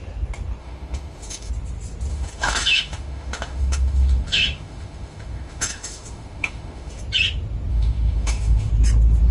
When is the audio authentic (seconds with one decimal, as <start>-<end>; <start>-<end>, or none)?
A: 0.0-0.6; 1.5-2.1; 7.0-7.7; 8.7-9.3

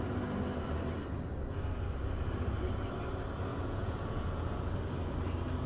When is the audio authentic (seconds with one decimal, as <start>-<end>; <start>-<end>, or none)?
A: 0.0-3.5; 4.8-5.7

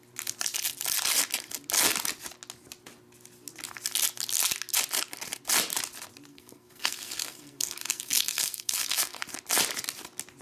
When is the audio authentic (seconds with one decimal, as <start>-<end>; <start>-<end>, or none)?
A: 0.0-6.3; 9.2-10.4

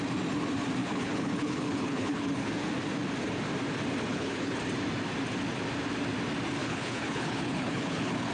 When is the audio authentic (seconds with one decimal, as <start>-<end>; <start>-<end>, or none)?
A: 0.0-0.8; 2.5-4.1; 4.6-6.6

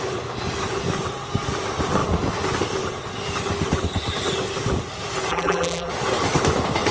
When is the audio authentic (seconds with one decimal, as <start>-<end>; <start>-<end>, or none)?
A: 0.0-5.3; 5.9-6.9